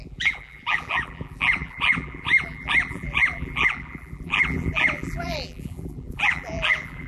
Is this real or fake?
fake